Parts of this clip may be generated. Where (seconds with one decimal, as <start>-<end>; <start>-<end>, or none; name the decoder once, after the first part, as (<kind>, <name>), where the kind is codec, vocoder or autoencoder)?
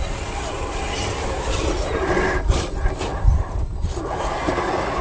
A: 3.1-4.0 (vocoder, BigVGAN v2)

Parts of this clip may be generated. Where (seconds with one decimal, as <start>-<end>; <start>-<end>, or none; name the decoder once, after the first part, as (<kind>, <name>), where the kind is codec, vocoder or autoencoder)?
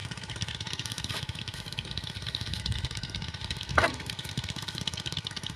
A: 0.0-5.6 (codec, SNAC)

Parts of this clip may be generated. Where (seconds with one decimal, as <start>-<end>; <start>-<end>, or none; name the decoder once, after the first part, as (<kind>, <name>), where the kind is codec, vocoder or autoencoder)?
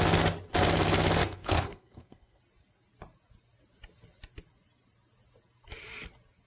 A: 1.2-2.4 (codec, SNAC)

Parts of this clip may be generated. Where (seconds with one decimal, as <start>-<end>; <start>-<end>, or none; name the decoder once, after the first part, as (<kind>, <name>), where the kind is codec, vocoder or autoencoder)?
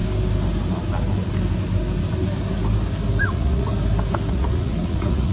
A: 3.2-3.7 (vocoder, Vocos); 4.3-5.3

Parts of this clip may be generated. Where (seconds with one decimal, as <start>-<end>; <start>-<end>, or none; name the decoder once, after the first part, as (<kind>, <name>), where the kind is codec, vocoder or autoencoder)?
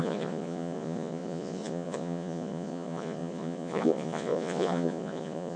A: 0.0-5.6 (vocoder, Vocos)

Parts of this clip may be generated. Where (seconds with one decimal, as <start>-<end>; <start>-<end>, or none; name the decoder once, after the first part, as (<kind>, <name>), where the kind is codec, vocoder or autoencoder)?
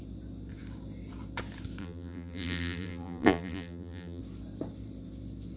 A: 1.8-4.2 (vocoder, BigVGAN v2)